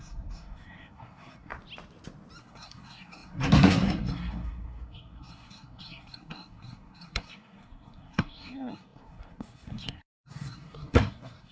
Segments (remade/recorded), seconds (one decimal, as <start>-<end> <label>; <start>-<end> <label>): 0.0-1.5 remade; 1.5-2.4 recorded; 2.4-11.5 remade